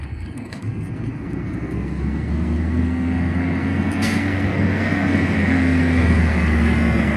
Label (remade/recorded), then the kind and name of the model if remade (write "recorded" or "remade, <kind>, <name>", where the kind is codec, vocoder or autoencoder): remade, codec, SNAC